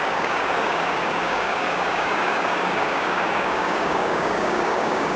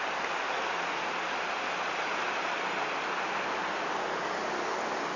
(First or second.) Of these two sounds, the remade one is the first